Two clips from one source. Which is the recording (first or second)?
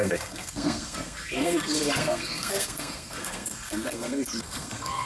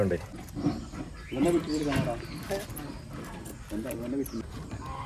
second